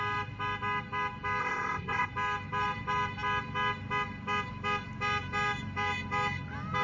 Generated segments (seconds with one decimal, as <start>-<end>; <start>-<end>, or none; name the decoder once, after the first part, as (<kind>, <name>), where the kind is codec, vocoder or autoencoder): 1.4-2.1 (codec, ZipCodec)